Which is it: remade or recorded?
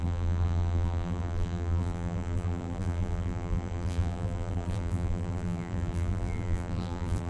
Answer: remade